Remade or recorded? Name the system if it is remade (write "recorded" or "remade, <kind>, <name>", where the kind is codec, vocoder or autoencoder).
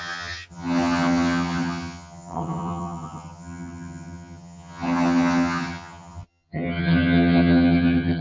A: remade, vocoder, HiFi-GAN